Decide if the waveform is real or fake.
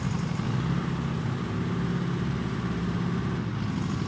real